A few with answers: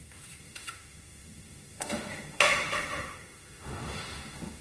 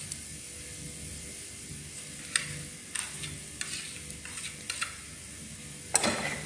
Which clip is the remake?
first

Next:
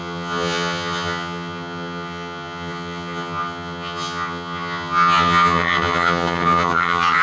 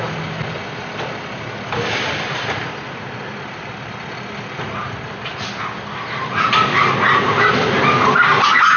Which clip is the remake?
first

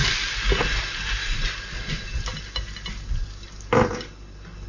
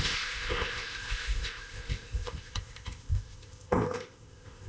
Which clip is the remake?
second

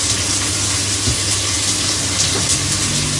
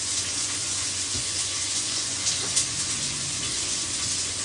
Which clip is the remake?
second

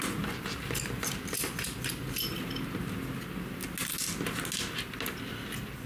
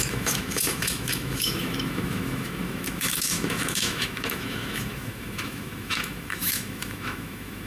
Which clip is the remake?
second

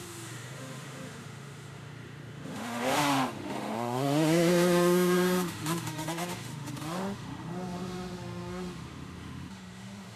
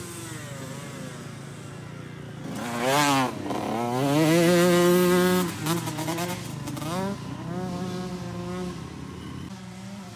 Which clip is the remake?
first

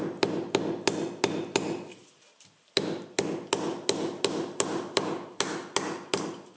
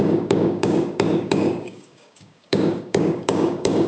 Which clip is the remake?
second